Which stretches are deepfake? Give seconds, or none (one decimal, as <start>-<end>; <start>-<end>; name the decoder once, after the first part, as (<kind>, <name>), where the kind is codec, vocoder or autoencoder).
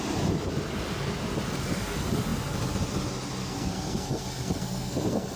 3.4-5.4 (codec, SNAC)